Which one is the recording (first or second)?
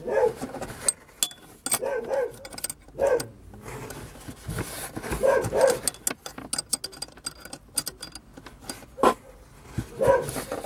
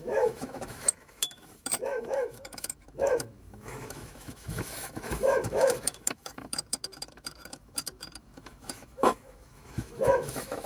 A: first